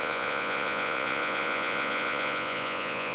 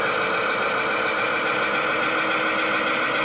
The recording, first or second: second